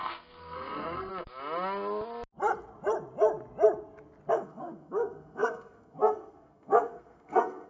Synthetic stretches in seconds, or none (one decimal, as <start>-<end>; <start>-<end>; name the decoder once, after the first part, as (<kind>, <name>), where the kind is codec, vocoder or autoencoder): 0.0-1.1 (codec, SNAC); 4.3-7.7